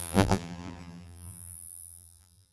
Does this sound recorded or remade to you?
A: remade